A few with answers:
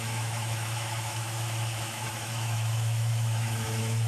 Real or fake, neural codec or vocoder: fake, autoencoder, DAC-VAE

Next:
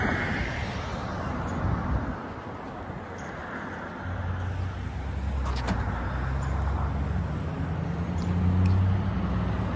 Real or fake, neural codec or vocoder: real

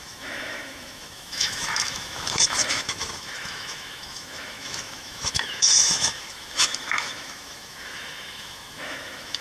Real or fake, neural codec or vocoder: fake, autoencoder, DAC-VAE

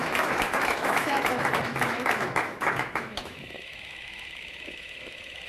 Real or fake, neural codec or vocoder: fake, autoencoder, DAC-VAE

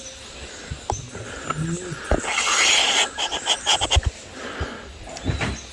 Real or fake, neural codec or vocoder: real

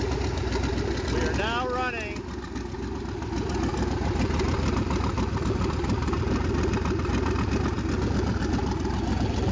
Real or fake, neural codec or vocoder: real